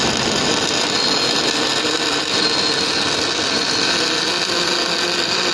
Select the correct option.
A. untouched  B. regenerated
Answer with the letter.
A